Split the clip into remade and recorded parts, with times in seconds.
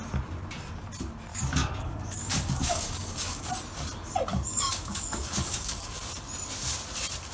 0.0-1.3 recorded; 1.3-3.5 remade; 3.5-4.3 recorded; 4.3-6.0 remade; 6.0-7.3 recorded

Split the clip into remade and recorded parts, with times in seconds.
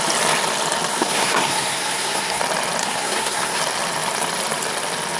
0.0-0.9 recorded; 0.9-2.4 remade; 2.4-2.8 recorded; 2.8-3.6 remade; 3.6-5.2 recorded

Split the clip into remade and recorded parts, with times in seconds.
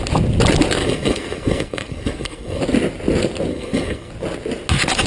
0.0-0.8 recorded; 0.8-2.6 remade; 2.6-3.5 recorded; 3.5-4.1 remade; 4.1-5.1 recorded